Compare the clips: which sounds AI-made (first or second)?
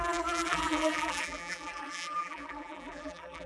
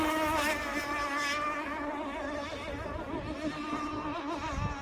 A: first